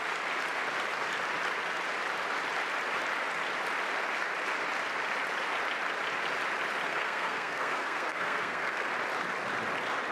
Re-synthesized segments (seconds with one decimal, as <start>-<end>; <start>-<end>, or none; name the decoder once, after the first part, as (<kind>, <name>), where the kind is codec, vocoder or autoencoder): 6.9-8.9 (codec, SNAC)